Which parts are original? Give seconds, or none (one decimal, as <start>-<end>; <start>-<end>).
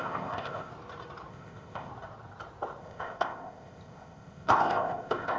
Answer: 0.7-1.3; 1.9-2.8